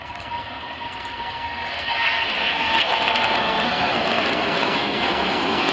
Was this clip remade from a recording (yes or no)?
yes